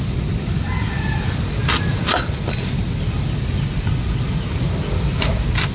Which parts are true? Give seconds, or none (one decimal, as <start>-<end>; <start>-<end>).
0.0-5.7